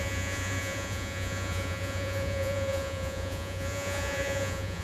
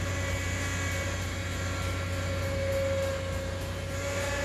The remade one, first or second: first